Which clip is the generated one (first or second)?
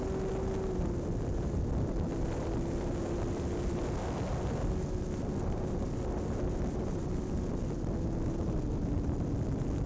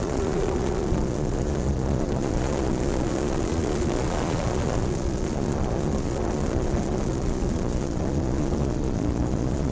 second